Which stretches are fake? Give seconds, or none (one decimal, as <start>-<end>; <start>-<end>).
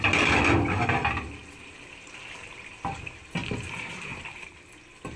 none